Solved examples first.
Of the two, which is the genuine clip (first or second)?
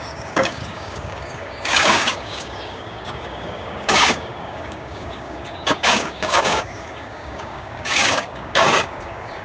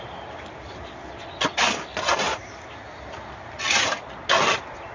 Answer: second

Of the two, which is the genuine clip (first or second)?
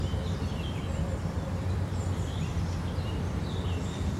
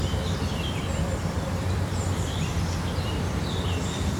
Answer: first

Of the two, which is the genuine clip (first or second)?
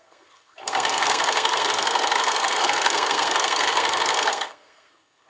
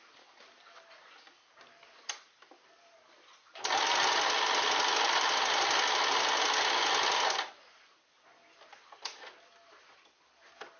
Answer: second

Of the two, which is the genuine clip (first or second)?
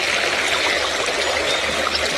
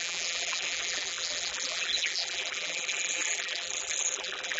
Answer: first